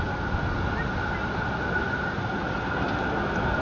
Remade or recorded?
recorded